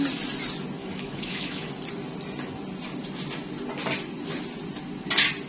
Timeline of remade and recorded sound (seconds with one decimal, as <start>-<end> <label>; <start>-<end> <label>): 0.0-0.8 recorded; 0.8-1.7 remade; 1.7-5.5 recorded